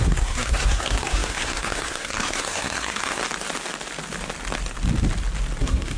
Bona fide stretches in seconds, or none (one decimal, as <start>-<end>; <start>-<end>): 3.2-5.6